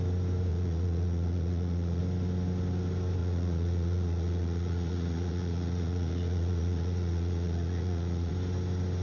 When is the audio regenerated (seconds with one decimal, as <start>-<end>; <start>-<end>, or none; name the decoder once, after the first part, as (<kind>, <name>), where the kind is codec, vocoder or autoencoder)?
0.5-2.0 (vocoder, Vocos); 3.2-8.3